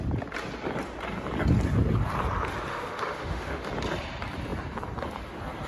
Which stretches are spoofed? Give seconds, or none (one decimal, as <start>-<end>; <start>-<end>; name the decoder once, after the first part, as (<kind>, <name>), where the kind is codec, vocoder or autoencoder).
2.7-3.7 (autoencoder, DAC-VAE)

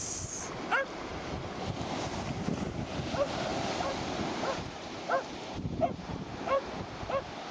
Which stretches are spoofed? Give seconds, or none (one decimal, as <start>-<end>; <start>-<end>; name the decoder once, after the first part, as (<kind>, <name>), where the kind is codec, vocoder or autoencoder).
3.5-6.7 (vocoder, BigVGAN v2)

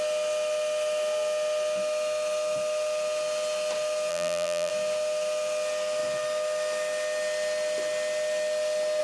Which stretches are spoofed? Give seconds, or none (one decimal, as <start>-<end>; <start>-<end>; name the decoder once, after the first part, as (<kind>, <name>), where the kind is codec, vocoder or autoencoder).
4.1-4.7 (vocoder, BigVGAN v2)

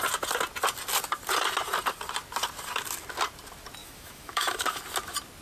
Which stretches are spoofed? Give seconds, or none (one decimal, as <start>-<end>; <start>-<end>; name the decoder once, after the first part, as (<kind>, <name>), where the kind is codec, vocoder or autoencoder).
3.8-4.8 (autoencoder, DAC-VAE)

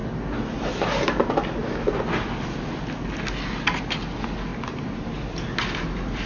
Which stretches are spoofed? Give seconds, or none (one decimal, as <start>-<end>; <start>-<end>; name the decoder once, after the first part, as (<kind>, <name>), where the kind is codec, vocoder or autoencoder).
none

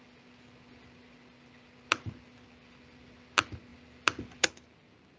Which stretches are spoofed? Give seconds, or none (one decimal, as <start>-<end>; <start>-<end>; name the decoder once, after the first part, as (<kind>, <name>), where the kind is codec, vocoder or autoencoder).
none